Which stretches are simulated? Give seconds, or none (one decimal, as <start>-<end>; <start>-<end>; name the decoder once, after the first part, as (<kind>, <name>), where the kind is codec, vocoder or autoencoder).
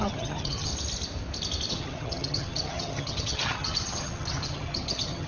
0.0-0.7 (vocoder, HiFi-GAN); 1.7-5.3